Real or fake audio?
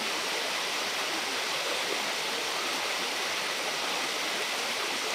real